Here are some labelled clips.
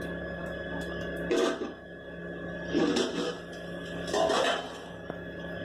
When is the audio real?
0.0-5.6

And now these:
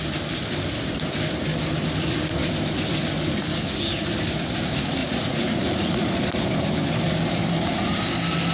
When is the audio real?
0.0-5.0; 6.1-8.5